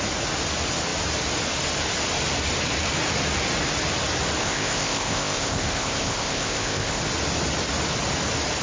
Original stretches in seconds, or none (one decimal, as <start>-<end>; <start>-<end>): 0.0-4.4; 7.0-8.6